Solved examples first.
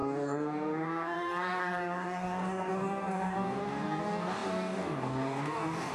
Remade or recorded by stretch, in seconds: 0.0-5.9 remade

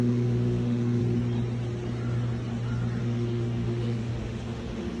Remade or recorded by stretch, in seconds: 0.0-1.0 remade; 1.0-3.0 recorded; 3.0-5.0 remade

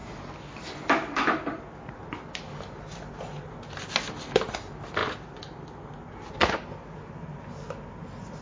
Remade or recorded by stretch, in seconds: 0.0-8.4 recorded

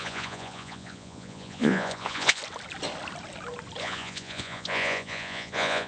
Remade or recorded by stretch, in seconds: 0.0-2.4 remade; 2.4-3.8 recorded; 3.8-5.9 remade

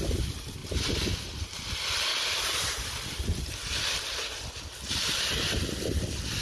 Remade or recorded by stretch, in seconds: 0.0-6.4 recorded